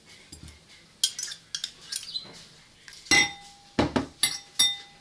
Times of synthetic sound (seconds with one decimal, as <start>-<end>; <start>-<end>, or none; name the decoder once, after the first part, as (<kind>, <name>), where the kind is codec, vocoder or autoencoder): none